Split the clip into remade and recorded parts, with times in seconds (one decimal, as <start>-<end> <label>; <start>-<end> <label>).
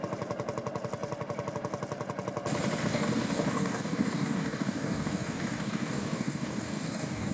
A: 0.0-2.8 recorded; 2.8-7.3 remade